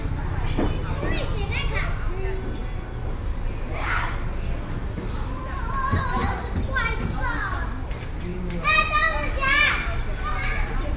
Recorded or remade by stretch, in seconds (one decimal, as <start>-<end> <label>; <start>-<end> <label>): 0.0-11.0 recorded